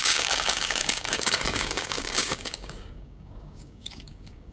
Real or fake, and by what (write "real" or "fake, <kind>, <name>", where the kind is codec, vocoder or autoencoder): fake, codec, DAC